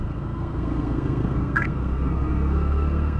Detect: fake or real fake